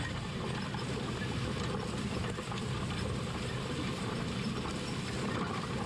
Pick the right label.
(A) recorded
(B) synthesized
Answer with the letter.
B